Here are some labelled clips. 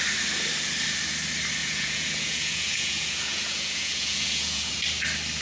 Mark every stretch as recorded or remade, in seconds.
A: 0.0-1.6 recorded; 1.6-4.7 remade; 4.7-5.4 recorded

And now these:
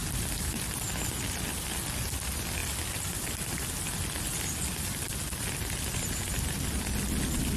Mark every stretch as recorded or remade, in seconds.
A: 0.0-1.2 remade; 1.2-7.6 recorded